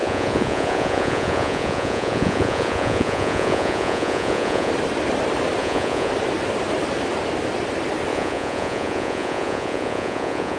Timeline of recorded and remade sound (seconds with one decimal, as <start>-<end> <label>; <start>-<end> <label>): 0.0-4.7 remade; 4.7-5.6 recorded; 5.6-6.1 remade; 6.1-8.1 recorded; 8.1-10.6 remade